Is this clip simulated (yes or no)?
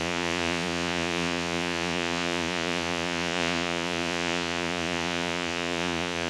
yes